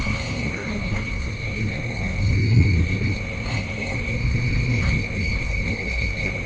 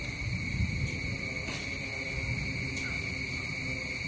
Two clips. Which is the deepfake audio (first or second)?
first